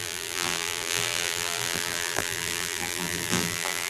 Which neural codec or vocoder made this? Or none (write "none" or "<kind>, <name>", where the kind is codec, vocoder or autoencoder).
vocoder, BigVGAN v2